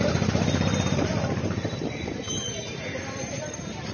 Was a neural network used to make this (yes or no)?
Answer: yes